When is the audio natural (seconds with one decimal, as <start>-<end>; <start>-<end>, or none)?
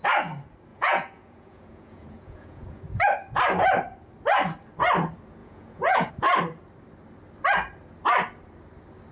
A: 0.0-0.7; 2.8-5.4; 6.1-9.1